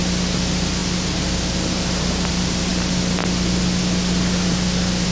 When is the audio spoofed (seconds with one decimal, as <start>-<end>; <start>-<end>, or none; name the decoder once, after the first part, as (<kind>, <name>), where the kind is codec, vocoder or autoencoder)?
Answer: none

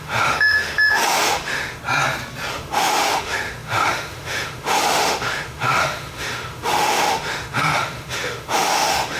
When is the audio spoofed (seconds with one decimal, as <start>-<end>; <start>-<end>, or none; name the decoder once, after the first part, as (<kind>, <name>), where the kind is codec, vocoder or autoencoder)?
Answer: 0.0-1.8 (autoencoder, DAC-VAE); 2.5-9.2